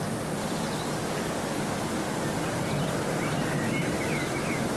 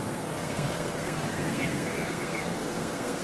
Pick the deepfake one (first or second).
second